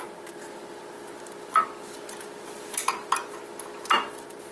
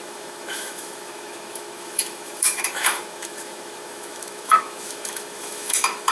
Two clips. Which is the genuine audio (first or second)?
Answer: first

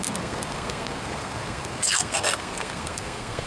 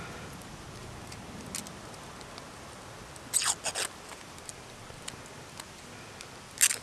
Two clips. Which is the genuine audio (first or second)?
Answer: second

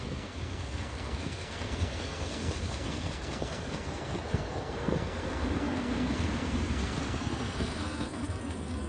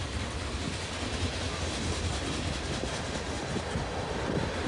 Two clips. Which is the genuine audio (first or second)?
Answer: second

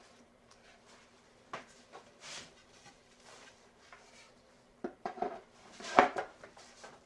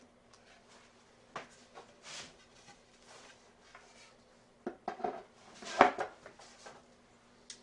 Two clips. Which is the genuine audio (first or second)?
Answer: second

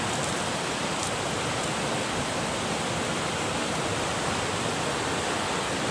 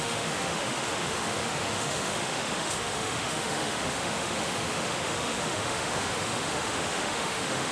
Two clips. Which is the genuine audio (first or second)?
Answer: first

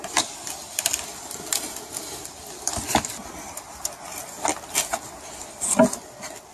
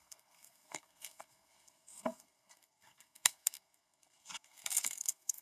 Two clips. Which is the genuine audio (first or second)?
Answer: first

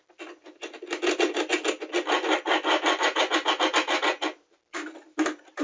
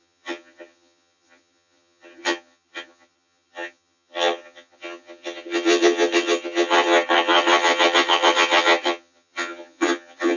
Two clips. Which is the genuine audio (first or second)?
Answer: first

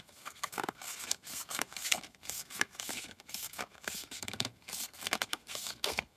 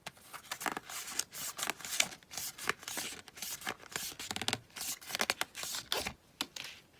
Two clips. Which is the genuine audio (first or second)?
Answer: second